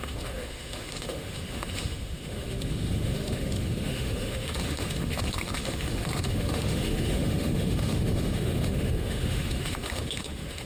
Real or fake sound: fake